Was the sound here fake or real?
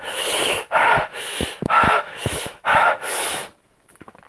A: fake